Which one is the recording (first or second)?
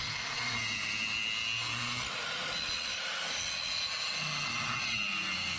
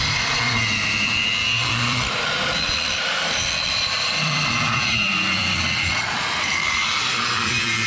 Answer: first